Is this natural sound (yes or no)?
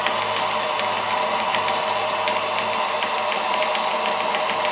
yes